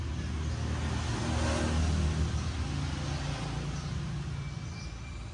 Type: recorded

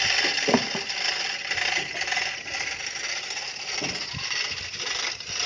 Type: recorded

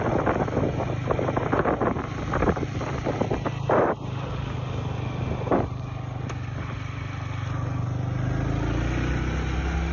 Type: recorded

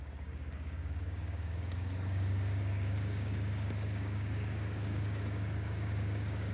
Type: remade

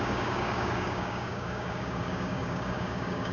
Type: remade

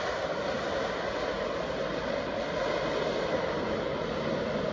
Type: recorded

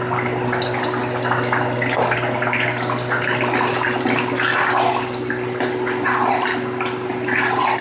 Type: recorded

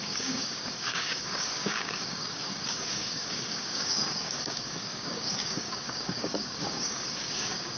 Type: remade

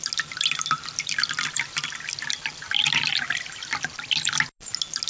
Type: recorded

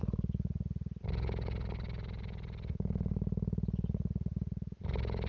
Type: recorded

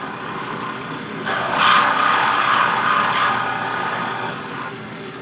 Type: remade